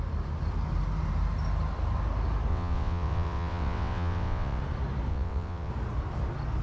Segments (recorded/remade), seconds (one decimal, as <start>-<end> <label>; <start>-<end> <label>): 0.0-2.5 recorded; 2.5-4.6 remade; 4.6-5.1 recorded; 5.1-5.7 remade; 5.7-6.6 recorded